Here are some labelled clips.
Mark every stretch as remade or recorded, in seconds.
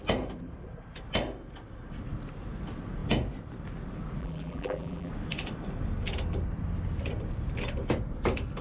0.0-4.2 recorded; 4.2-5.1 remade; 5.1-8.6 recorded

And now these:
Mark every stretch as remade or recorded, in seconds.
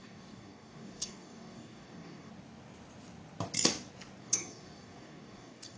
0.0-2.3 remade; 2.3-4.2 recorded; 4.2-5.8 remade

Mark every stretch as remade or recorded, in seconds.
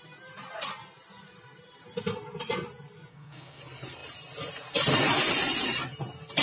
0.0-3.1 recorded; 3.1-3.6 remade; 3.6-6.4 recorded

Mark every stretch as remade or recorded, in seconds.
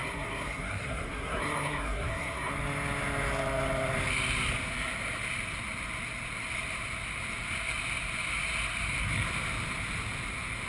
0.0-2.5 remade; 2.5-10.7 recorded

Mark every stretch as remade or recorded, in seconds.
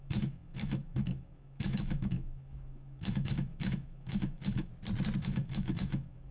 0.0-4.7 remade; 4.7-5.2 recorded; 5.2-6.3 remade